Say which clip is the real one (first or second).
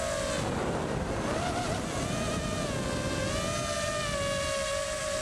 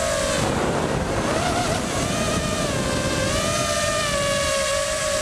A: first